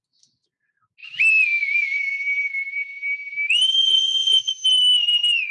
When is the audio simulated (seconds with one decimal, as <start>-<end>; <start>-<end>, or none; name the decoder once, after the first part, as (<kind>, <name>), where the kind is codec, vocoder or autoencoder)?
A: 3.8-4.5 (vocoder, Vocos)